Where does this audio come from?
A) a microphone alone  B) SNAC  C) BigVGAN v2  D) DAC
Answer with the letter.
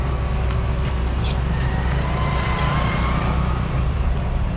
A